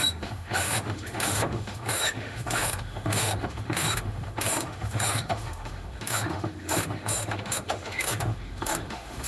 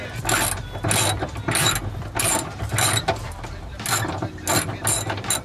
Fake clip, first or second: first